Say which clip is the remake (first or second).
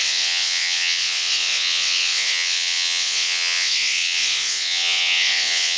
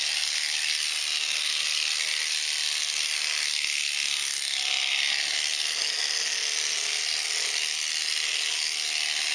first